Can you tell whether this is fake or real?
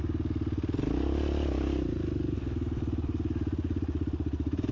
real